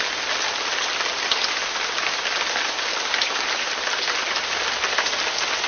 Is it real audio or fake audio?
real